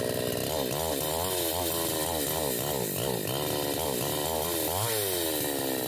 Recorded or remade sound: recorded